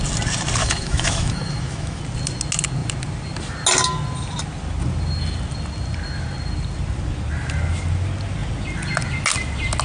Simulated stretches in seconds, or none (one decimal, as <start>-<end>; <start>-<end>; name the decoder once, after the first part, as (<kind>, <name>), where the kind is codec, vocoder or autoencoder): 0.6-2.0 (autoencoder, DAC-VAE)